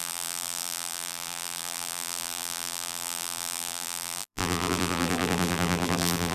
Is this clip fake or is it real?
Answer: fake